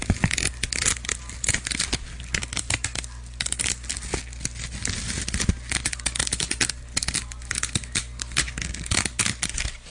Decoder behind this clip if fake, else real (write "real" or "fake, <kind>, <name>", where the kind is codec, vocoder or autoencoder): real